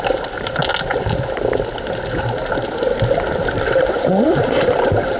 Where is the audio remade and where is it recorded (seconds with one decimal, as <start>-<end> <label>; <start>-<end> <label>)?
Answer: 0.0-0.6 remade; 0.6-3.7 recorded; 3.7-5.2 remade